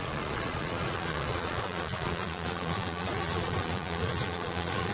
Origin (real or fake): fake